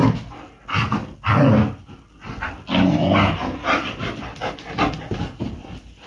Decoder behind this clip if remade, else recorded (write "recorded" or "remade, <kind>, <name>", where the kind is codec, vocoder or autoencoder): recorded